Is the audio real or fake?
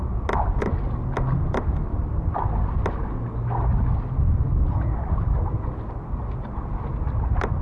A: real